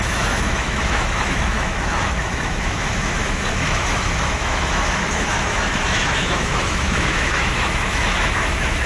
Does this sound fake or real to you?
fake